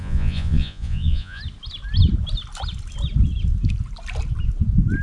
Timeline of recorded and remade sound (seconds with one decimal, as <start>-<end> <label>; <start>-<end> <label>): 0.0-1.4 remade; 1.4-5.0 recorded